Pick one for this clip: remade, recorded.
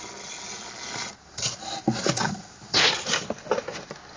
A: recorded